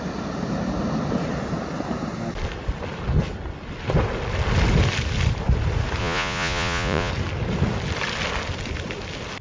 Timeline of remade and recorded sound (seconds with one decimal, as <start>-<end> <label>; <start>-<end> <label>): 0.0-6.0 recorded; 6.0-7.1 remade; 7.1-9.4 recorded